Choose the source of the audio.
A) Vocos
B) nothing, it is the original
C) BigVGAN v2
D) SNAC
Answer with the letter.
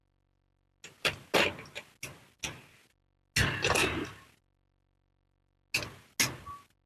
B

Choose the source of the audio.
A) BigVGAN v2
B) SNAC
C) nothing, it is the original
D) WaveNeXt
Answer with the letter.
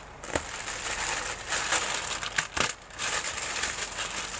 C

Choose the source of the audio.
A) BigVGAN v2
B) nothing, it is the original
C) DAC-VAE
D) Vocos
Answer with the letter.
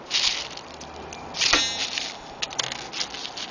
B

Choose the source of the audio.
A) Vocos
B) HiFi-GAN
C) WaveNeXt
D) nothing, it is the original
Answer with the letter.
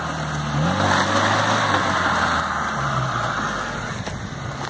D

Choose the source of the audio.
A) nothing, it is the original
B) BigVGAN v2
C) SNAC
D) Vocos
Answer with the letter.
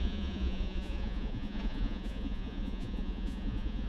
D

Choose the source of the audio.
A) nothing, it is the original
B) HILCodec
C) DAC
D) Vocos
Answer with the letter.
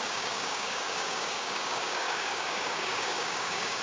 C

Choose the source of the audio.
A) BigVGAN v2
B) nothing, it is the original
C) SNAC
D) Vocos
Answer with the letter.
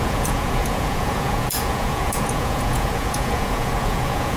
D